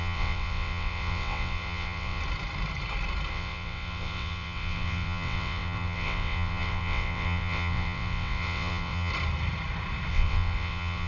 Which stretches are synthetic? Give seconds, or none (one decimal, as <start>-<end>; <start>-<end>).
0.0-2.2; 3.3-9.1; 10.1-11.1